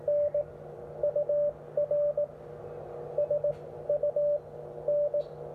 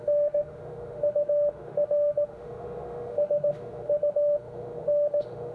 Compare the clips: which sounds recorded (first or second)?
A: first